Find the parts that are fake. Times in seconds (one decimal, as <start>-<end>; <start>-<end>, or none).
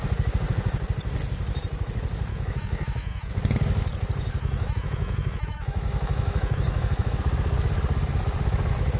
2.3-3.3; 4.4-7.2